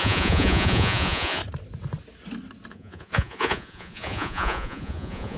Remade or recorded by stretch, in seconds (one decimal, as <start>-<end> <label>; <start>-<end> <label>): 0.0-1.4 remade; 1.4-2.7 recorded; 2.7-5.4 remade